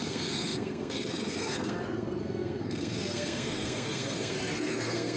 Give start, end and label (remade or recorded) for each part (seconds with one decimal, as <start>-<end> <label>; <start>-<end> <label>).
0.0-5.2 remade